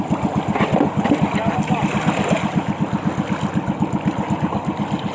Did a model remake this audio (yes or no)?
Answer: no